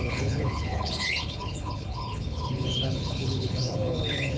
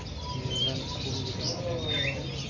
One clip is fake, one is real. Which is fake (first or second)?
first